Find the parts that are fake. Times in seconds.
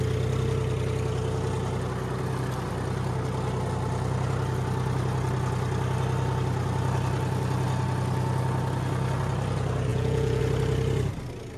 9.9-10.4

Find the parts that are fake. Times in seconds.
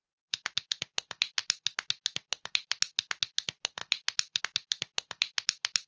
none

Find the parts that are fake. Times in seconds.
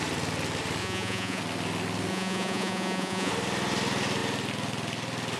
0.8-1.4; 2.1-3.3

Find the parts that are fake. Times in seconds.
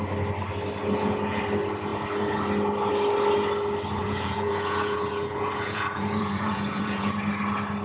0.8-1.4; 4.0-7.2